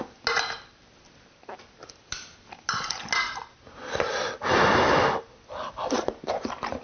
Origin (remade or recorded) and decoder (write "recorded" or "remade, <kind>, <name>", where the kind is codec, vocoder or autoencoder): recorded